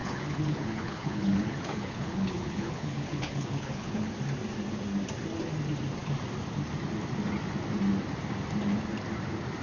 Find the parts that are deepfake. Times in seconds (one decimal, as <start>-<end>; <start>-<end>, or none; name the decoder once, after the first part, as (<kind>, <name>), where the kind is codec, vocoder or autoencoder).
0.0-4.1 (codec, HILCodec)